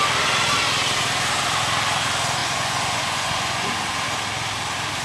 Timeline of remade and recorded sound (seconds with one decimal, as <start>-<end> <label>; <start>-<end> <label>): 0.0-2.4 recorded; 2.4-3.7 remade; 3.7-5.0 recorded